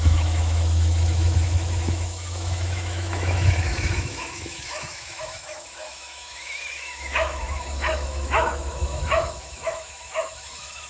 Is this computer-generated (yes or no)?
yes